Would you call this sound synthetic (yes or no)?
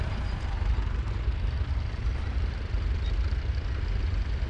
no